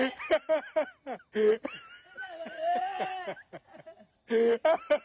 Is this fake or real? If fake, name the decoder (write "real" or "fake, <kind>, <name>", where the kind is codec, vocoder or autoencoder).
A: real